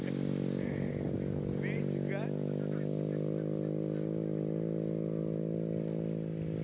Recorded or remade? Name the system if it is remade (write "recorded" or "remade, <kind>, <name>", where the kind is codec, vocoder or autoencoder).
recorded